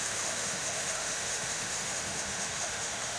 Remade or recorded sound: remade